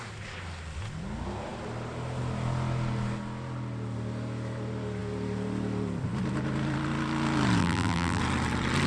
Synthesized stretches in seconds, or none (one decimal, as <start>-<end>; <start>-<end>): 7.6-8.2